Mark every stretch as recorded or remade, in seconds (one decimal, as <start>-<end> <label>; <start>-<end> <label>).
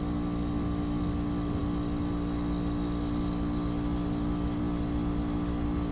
0.0-5.9 recorded